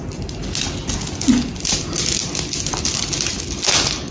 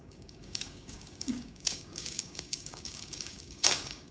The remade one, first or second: second